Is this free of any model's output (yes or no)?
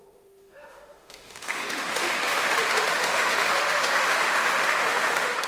no